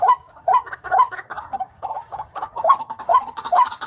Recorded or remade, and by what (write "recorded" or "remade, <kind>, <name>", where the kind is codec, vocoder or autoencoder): remade, codec, DAC